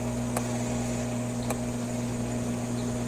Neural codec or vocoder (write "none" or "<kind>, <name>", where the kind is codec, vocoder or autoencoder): none